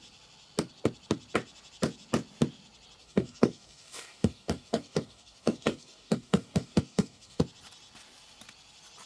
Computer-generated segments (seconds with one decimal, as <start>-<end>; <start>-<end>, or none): 3.0-7.4

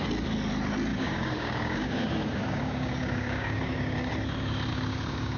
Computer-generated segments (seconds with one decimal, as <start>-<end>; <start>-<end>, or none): 0.9-4.1; 4.7-5.4

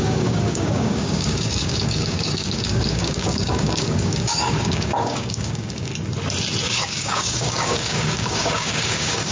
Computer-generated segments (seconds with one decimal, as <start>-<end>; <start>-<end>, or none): 0.0-5.9; 6.6-9.3

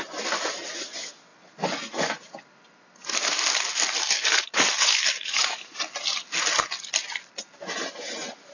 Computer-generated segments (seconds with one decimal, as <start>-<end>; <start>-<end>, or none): 4.0-5.8

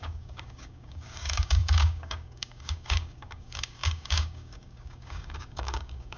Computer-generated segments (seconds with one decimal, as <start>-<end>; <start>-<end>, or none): 0.0-6.2

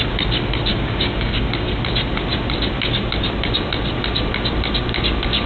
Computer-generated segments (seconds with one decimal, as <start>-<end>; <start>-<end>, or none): 0.7-1.8

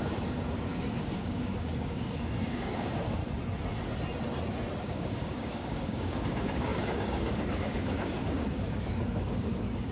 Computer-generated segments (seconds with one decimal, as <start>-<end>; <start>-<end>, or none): 0.0-3.2; 4.8-9.9